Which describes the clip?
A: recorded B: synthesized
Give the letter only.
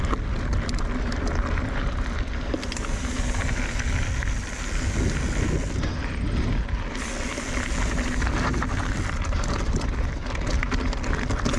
A